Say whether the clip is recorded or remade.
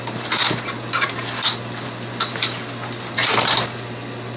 recorded